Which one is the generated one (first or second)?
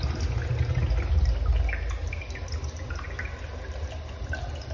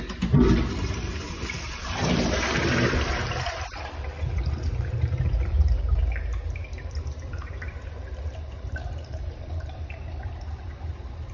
second